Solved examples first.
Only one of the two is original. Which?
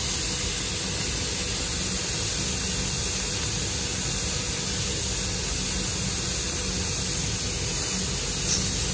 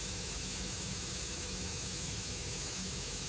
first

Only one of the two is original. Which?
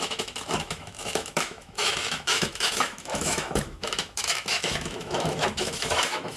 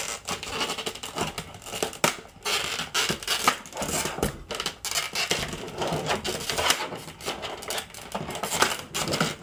second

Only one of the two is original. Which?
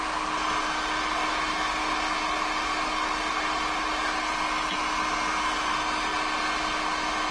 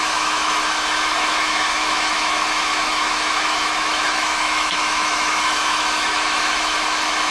first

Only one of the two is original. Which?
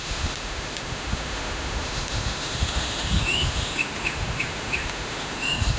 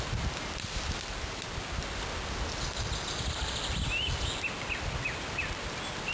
second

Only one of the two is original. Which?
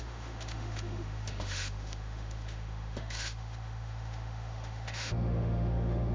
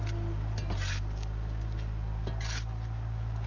second